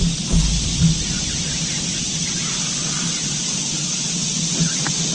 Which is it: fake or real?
real